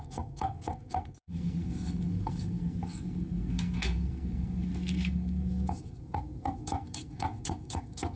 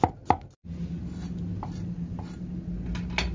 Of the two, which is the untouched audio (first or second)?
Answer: second